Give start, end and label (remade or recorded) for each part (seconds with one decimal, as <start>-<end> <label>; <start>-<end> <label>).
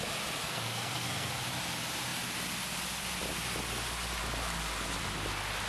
0.0-0.4 recorded; 0.4-1.3 remade; 1.3-5.7 recorded